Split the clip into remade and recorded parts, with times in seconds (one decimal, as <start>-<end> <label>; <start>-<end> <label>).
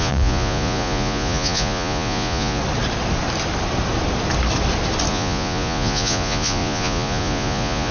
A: 0.0-2.6 remade; 2.6-5.1 recorded; 5.1-7.9 remade